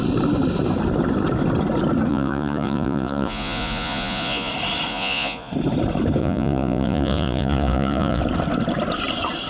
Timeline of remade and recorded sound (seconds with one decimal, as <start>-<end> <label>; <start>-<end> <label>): 0.0-2.1 recorded; 2.1-4.5 remade; 4.5-4.9 recorded; 4.9-5.5 remade; 5.5-6.2 recorded; 6.2-8.2 remade; 8.2-9.5 recorded

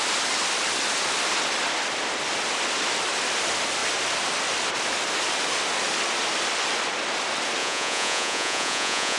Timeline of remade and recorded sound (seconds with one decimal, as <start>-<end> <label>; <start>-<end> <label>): 0.0-7.6 recorded; 7.6-9.2 remade

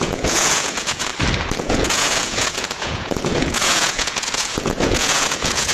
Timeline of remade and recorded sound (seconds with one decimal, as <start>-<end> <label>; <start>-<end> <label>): 0.0-1.1 remade; 1.1-1.6 recorded; 1.6-5.7 remade

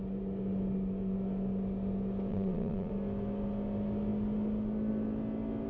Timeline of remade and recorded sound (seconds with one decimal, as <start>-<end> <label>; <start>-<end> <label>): 0.0-2.3 recorded; 2.3-2.9 remade; 2.9-5.7 recorded

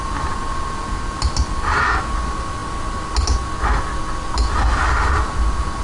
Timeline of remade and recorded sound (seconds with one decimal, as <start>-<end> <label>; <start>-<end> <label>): 0.0-5.8 recorded

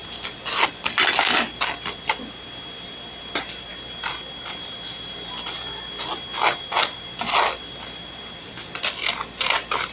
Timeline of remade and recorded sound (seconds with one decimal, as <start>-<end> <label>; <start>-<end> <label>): 0.0-9.9 recorded